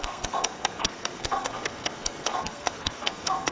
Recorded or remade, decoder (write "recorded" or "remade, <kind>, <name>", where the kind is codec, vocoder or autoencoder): remade, codec, SNAC